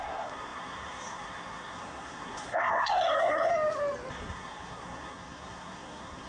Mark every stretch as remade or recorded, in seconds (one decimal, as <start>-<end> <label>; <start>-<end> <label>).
0.0-3.5 remade; 3.5-4.1 recorded; 4.1-6.3 remade